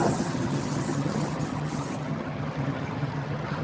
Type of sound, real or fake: fake